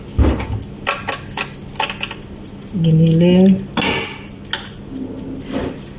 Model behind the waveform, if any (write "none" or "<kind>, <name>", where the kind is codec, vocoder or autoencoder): none